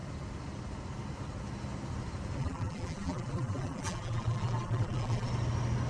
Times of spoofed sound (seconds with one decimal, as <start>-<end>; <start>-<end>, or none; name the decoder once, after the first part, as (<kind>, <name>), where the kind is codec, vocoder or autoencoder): 2.4-5.3 (vocoder, BigVGAN v2)